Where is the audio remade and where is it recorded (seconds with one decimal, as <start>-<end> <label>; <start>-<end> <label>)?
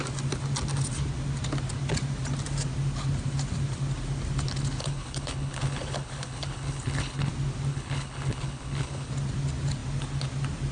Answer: 0.0-4.8 recorded; 4.8-7.3 remade; 7.3-7.7 recorded; 7.7-9.1 remade; 9.1-10.7 recorded